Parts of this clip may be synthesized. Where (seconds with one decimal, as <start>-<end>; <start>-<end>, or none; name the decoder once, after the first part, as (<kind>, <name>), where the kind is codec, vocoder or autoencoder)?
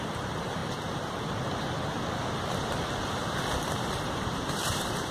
0.0-0.6 (vocoder, BigVGAN v2); 3.6-5.1